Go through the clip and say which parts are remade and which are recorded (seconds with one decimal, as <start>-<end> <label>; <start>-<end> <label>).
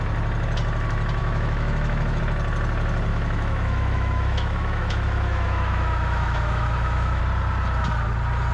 0.0-1.2 recorded; 1.2-2.2 remade; 2.2-3.1 recorded; 3.1-7.2 remade; 7.2-8.5 recorded